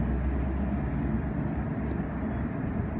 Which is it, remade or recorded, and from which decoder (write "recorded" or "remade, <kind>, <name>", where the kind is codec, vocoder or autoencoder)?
recorded